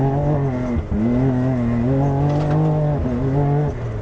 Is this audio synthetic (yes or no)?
no